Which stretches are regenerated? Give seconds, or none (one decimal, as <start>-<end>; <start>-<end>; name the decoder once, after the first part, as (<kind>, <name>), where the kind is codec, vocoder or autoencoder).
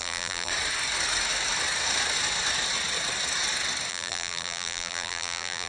0.0-0.5 (vocoder, BigVGAN v2); 3.9-5.7